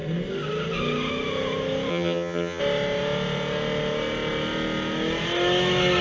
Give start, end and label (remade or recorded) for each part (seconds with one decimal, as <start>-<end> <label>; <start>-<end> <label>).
0.0-1.9 recorded; 1.9-2.6 remade; 2.6-6.0 recorded